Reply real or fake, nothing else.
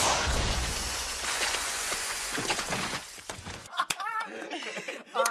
fake